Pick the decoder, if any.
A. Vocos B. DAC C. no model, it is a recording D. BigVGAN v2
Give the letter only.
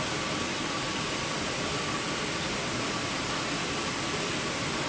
D